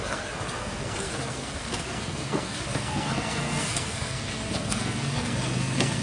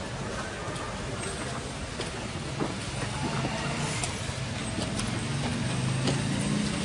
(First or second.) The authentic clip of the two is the second